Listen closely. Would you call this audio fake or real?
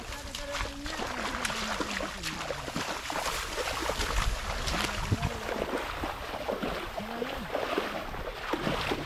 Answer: real